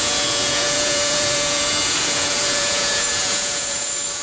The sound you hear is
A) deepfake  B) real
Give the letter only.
A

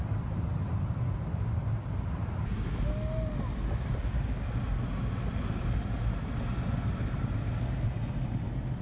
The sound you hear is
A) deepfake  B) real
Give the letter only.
B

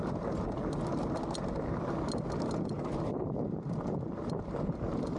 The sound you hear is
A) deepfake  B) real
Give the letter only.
B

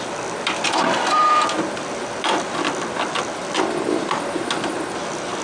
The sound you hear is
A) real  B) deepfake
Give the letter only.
A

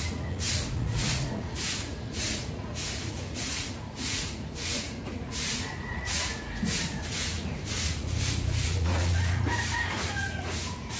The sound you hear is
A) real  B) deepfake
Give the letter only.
B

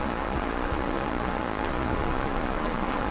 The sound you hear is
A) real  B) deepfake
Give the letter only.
B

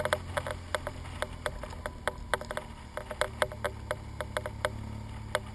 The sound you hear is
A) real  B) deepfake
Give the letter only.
A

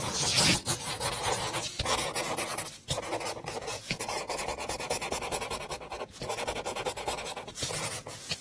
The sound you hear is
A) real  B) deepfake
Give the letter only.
B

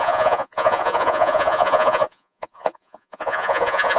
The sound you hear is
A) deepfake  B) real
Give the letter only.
A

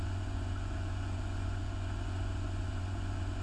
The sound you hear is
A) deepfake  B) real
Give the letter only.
A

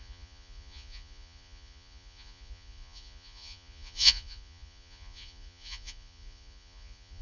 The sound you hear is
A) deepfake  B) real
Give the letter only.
A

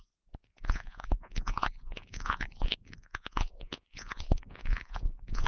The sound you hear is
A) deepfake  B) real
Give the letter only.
A